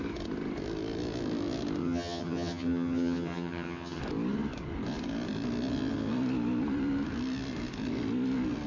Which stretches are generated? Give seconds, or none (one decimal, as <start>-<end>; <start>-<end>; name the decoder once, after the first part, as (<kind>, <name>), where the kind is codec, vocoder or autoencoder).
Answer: 1.8-4.0 (vocoder, HiFi-GAN)